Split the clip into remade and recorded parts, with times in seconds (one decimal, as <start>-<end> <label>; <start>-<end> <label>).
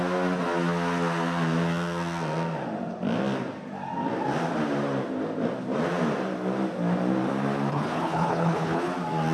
0.0-7.7 recorded; 7.7-8.9 remade; 8.9-9.3 recorded